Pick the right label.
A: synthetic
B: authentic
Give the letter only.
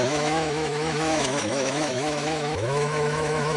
A